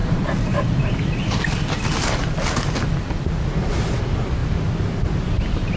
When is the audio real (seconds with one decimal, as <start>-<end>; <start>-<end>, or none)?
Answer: 0.0-5.8